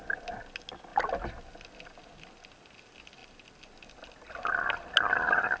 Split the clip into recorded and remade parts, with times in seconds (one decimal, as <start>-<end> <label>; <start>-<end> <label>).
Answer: 0.0-5.6 recorded